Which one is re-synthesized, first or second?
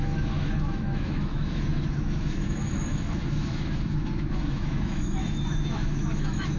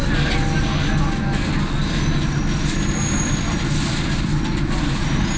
first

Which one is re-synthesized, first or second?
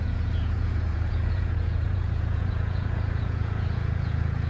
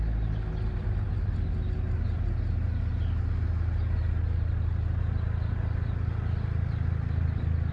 first